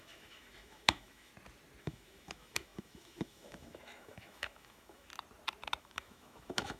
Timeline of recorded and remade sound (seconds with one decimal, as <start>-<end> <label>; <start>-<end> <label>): 0.0-1.3 remade; 1.3-1.8 recorded; 1.8-5.1 remade; 5.1-5.8 recorded; 5.8-6.8 remade